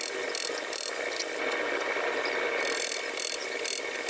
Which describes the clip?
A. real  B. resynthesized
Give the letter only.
B